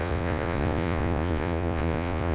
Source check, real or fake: fake